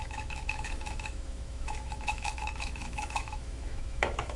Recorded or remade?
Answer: remade